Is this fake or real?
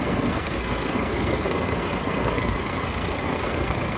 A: fake